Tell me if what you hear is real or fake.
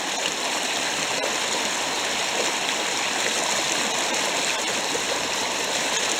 real